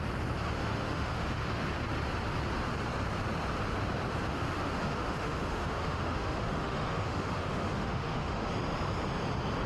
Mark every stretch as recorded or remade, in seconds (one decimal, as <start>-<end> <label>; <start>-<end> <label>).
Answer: 0.0-0.6 recorded; 0.6-1.6 remade; 1.6-4.3 recorded; 4.3-8.5 remade; 8.5-9.7 recorded